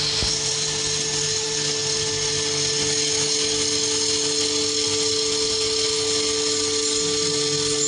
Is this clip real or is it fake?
real